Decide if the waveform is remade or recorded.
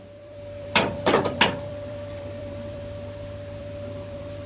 remade